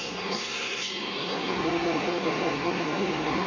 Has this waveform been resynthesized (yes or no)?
yes